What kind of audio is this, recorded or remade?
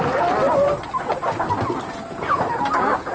recorded